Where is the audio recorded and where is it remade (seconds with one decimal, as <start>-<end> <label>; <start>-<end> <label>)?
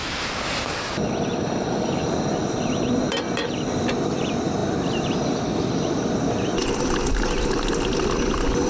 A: 0.0-8.7 recorded